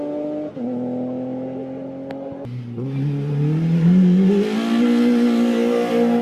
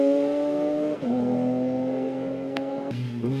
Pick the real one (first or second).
first